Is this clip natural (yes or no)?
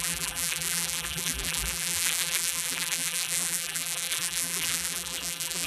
no